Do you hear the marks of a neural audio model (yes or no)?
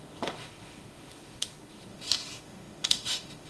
yes